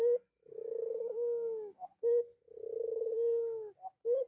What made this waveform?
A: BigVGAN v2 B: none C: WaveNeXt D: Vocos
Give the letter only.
B